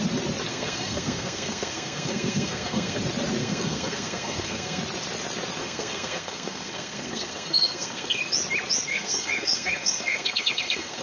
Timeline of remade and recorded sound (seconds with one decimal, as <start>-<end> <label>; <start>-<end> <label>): 0.0-0.5 recorded; 0.5-3.0 remade; 3.0-3.4 recorded; 3.4-4.8 remade; 4.8-5.6 recorded; 5.6-8.2 remade; 8.2-8.9 recorded; 8.9-11.0 remade